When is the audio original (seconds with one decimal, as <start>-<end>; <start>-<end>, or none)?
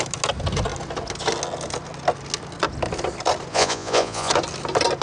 0.0-3.5; 4.3-5.0